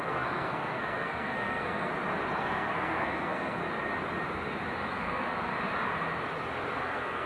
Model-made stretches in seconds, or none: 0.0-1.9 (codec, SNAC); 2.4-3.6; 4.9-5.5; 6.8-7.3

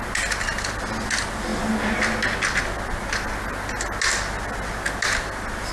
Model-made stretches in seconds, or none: none

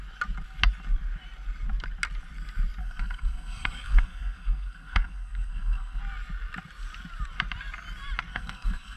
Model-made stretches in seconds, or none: 2.8-6.0 (codec, SNAC); 8.3-9.0

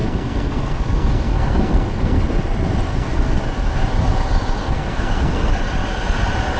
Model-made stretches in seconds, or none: 0.0-2.2 (codec, SNAC); 2.9-3.4; 4.6-5.6